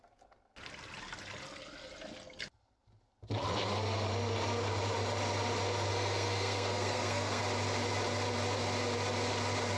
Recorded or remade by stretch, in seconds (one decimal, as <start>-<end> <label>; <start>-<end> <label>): 0.0-5.9 recorded; 5.9-7.4 remade; 7.4-9.8 recorded